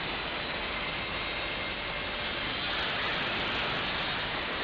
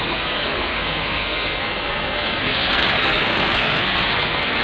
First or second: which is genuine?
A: first